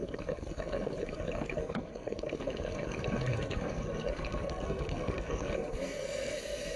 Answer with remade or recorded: remade